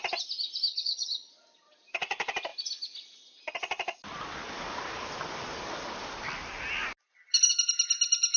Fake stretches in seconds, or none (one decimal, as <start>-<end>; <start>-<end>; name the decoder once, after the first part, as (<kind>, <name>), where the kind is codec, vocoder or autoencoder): 0.7-1.3 (codec, HILCodec)

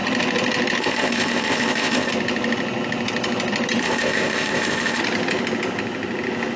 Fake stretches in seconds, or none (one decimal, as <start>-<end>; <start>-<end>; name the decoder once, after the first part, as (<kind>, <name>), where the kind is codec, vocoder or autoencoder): 0.8-2.1 (codec, ZipCodec); 3.8-5.0